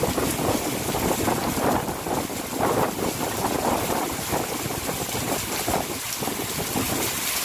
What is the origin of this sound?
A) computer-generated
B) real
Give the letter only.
B